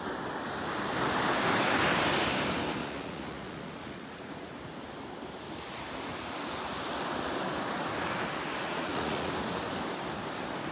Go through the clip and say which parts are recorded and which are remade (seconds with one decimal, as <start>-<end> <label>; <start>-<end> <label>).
0.0-2.8 recorded; 2.8-4.3 remade; 4.3-8.6 recorded; 8.6-9.3 remade; 9.3-10.7 recorded

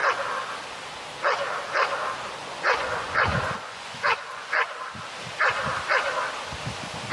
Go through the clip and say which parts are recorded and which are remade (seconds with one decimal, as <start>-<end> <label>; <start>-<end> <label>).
0.0-2.4 recorded; 2.4-4.7 remade; 4.7-7.1 recorded

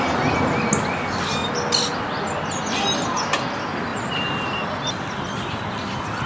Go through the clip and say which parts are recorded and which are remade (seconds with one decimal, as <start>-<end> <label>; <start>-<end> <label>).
0.0-6.3 recorded

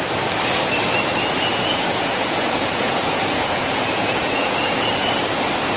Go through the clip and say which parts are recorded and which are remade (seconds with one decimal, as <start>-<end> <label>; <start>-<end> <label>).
0.0-1.5 recorded; 1.5-4.9 remade; 4.9-5.8 recorded

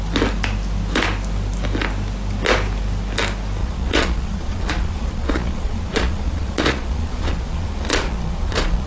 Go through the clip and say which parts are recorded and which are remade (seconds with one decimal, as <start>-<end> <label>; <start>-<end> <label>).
0.0-3.6 recorded; 3.6-8.9 remade

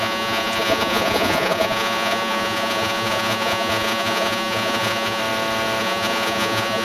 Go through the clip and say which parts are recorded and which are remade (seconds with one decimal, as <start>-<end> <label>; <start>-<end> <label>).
0.0-5.2 remade; 5.2-5.8 recorded; 5.8-6.8 remade

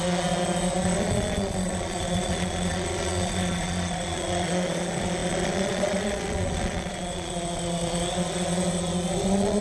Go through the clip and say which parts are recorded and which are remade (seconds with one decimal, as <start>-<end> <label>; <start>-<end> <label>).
0.0-9.6 remade